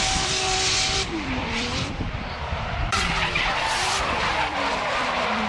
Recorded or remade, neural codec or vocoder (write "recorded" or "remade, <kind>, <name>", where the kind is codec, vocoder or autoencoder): remade, vocoder, BigVGAN v2